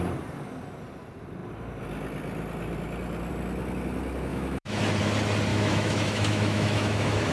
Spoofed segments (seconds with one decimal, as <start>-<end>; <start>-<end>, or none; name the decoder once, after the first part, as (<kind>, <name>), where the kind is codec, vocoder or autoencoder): 4.3-4.8 (autoencoder, DAC-VAE); 5.5-7.3

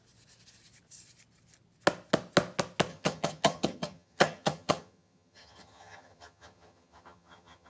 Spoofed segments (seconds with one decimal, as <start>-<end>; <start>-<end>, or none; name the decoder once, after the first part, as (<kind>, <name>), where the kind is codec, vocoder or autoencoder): 2.9-7.7 (vocoder, HiFi-GAN)

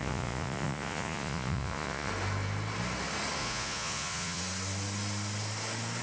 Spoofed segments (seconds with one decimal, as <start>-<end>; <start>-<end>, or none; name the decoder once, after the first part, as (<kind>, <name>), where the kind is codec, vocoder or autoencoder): 0.0-2.1 (vocoder, Vocos); 3.4-4.4